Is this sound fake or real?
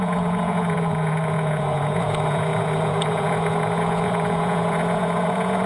fake